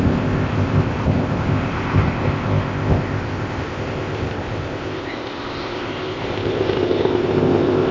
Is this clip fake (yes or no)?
yes